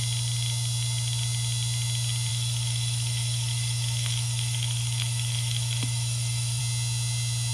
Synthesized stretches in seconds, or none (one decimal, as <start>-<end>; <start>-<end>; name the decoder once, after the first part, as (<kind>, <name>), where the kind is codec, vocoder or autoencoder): 2.3-6.6 (autoencoder, DAC-VAE)